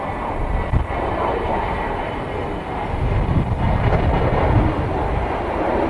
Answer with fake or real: real